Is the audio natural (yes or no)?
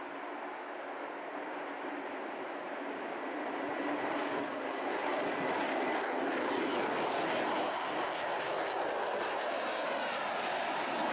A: yes